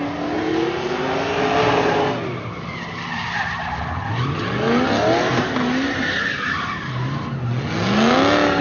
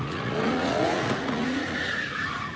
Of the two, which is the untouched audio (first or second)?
first